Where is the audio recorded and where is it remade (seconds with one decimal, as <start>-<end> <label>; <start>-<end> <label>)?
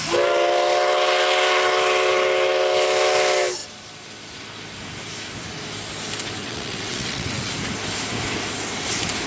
0.0-6.4 recorded; 6.4-7.5 remade; 7.5-9.3 recorded